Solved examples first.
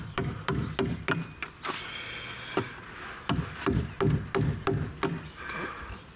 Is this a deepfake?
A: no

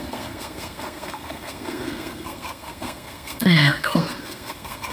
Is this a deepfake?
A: yes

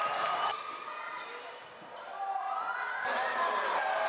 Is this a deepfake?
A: no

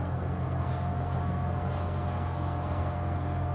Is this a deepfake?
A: yes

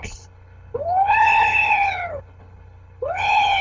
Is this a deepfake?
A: yes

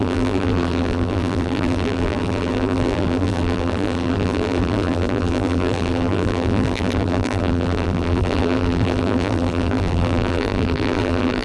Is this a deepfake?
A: yes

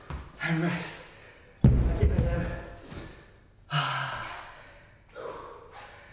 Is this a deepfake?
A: no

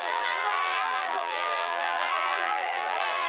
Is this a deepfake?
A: yes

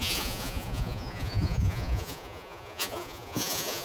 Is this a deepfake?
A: yes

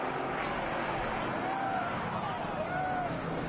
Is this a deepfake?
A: no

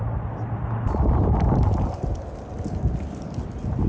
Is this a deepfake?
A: no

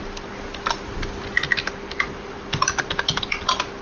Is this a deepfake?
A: no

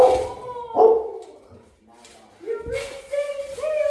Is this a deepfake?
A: no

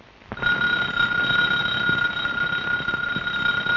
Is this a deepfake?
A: no